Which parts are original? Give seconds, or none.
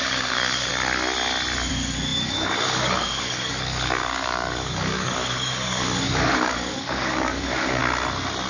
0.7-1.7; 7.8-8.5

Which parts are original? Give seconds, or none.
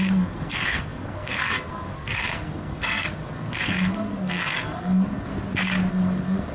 5.3-5.9